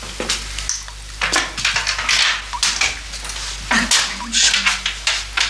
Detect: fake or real real